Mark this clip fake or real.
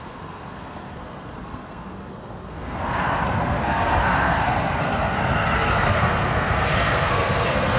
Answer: fake